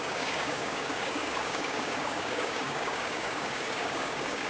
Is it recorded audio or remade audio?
remade